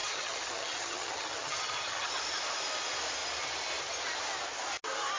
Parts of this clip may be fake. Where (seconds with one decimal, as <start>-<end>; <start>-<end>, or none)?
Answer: 0.0-2.1